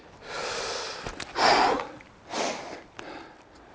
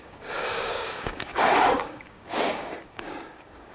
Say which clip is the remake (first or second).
second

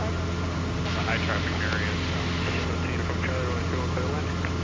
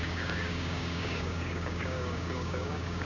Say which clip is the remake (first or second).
second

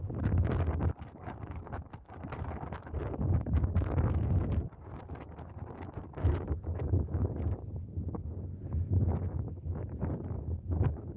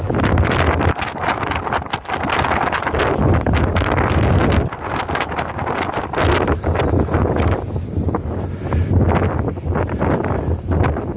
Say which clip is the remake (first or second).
first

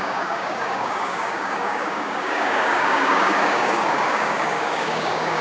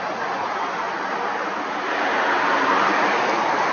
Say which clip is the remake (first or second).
first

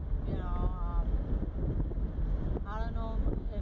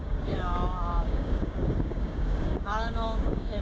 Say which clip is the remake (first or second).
second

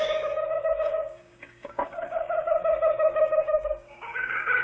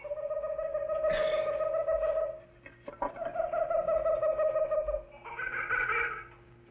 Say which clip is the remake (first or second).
first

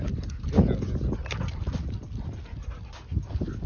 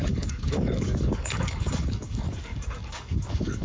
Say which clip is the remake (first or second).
second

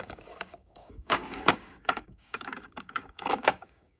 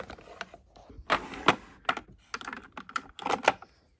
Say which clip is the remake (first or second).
first